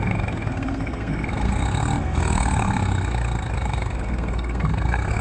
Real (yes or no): no